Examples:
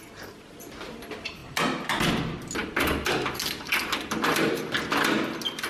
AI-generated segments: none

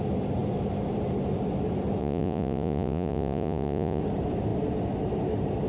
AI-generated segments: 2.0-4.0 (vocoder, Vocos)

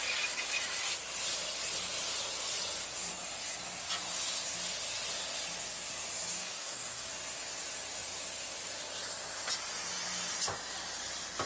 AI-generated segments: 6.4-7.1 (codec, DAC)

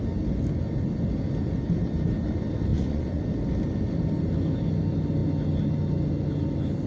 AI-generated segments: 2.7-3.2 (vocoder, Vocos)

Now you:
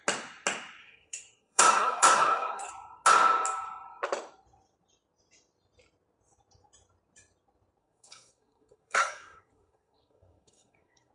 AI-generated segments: 0.8-2.7 (codec, SNAC); 7.8-11.1

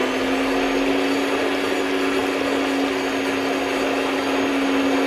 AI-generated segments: none

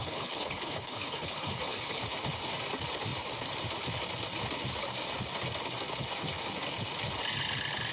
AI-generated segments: 0.0-2.0 (codec, HILCodec)